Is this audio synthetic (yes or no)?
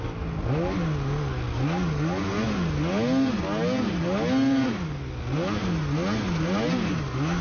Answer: no